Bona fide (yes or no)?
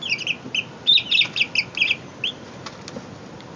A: yes